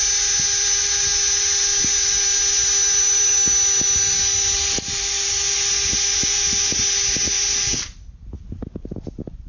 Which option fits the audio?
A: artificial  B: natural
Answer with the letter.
B